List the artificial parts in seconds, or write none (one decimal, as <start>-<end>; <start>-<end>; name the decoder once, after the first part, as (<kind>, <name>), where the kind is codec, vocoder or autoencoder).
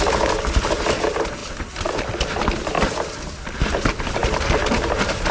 0.0-5.3 (vocoder, BigVGAN v2)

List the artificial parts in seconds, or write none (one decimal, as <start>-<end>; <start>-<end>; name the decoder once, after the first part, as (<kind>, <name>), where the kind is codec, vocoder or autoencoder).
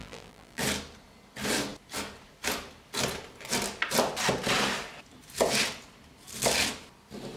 0.0-0.6 (vocoder, BigVGAN v2)